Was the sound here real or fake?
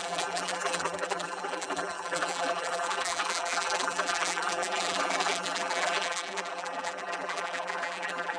fake